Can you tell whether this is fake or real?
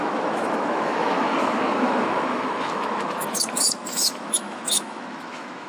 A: fake